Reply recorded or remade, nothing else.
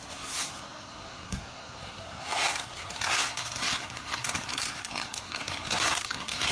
remade